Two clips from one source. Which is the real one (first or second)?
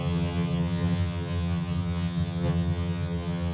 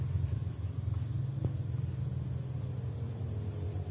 second